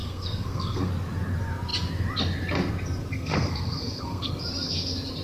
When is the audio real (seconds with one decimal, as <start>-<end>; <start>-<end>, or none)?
0.9-3.1; 4.3-5.2